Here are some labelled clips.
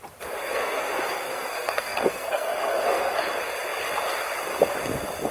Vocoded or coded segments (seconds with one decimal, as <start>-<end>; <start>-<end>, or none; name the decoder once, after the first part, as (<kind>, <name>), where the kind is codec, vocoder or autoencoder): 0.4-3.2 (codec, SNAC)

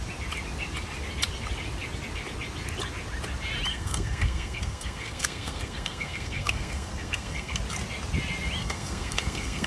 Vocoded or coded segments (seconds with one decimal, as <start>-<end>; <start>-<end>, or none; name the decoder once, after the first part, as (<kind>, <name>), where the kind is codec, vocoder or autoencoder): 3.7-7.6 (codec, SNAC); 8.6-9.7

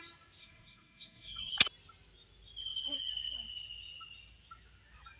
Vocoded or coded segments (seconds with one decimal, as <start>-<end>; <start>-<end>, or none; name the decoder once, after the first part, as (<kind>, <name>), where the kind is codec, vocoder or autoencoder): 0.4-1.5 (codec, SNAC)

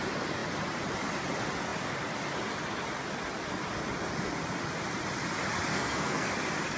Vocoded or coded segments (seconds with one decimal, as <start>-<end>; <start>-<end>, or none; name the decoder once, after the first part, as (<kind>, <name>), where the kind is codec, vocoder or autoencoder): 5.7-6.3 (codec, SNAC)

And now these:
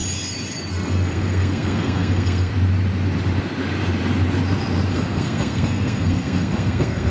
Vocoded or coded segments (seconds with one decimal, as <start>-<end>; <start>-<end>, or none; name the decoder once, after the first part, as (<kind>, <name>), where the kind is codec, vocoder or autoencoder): 0.7-2.5 (codec, SNAC); 4.9-7.1

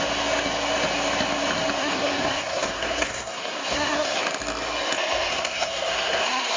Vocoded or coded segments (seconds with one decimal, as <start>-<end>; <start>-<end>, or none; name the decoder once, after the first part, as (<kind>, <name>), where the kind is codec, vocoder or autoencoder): 1.8-4.2 (codec, SNAC); 5.3-6.6

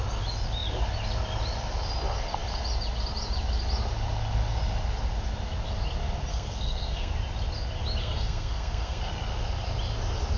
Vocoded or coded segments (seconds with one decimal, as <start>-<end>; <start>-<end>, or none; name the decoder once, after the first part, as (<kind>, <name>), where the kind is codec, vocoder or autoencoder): 6.3-7.1 (codec, SNAC); 8.0-9.0